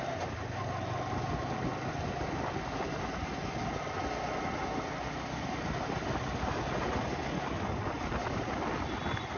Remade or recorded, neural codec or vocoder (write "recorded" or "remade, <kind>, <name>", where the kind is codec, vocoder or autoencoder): recorded